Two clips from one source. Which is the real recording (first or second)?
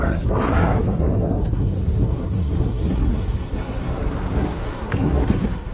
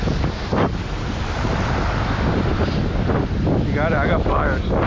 second